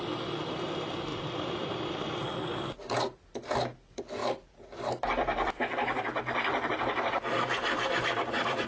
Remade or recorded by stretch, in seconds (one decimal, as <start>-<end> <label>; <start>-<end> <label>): 0.0-1.1 recorded; 1.1-2.7 remade; 2.7-4.2 recorded; 4.2-8.7 remade